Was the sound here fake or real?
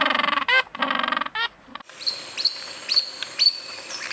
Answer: fake